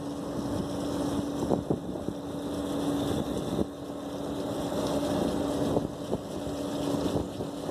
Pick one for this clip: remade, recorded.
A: recorded